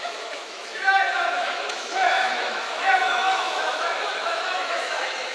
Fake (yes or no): yes